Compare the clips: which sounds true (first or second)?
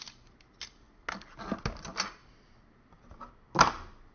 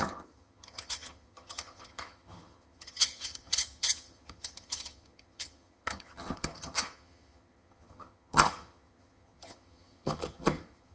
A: first